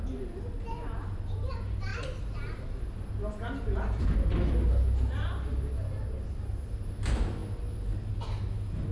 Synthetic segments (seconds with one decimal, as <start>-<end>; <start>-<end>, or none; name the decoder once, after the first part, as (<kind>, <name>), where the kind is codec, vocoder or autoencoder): none

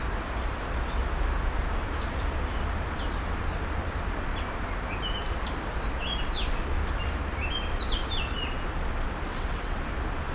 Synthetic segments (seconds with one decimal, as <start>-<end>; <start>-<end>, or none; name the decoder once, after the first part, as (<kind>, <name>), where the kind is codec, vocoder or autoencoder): 9.3-9.8 (vocoder, WaveNeXt)